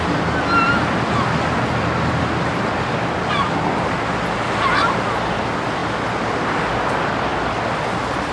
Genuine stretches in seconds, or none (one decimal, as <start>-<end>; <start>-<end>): 0.0-8.3